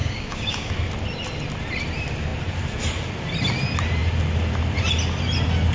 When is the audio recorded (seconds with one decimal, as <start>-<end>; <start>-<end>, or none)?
0.7-5.7